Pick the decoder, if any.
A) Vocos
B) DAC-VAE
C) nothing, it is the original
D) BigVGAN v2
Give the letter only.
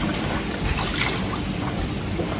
C